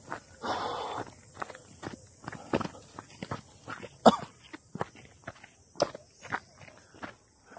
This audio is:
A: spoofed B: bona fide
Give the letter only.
B